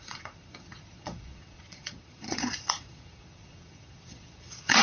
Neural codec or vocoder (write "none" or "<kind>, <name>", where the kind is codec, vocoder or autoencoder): vocoder, Vocos